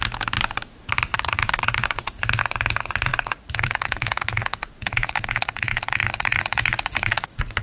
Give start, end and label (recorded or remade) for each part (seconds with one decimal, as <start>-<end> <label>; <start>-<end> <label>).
0.0-1.1 recorded; 1.1-2.2 remade; 2.2-3.1 recorded; 3.1-7.6 remade